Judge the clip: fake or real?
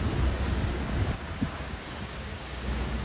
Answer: fake